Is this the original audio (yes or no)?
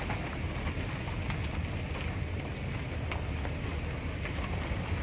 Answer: yes